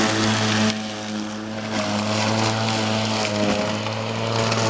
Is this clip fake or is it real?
real